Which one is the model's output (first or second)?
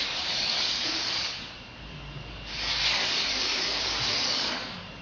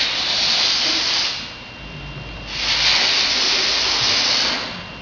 first